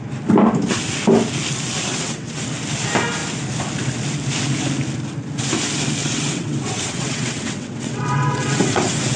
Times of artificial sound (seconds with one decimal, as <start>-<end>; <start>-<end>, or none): 1.9-2.4; 6.0-9.2